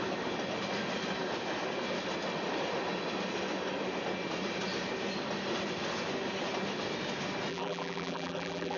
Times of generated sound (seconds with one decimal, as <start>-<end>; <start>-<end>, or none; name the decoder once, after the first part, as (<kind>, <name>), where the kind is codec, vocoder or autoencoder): 7.5-8.8 (vocoder, BigVGAN v2)

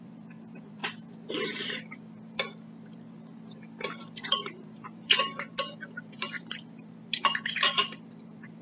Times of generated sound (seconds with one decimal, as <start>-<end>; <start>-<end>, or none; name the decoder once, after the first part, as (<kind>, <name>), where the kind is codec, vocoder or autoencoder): 0.0-8.6 (vocoder, BigVGAN v2)

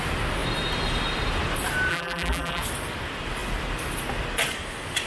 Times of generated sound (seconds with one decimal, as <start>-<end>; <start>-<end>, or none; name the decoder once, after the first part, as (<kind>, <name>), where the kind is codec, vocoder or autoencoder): 1.9-2.6 (vocoder, BigVGAN v2)

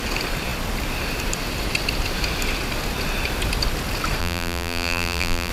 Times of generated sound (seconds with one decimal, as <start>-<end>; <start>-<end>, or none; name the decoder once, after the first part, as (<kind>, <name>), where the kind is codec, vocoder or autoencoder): 4.2-5.5 (vocoder, BigVGAN v2)

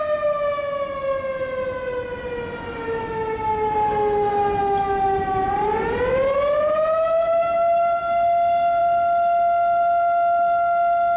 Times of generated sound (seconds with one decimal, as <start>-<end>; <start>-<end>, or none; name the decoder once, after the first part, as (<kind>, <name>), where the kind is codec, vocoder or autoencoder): none

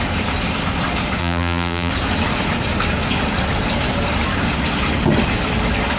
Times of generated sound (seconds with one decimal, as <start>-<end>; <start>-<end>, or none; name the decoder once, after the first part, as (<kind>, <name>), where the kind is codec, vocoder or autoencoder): 1.2-1.9 (vocoder, BigVGAN v2)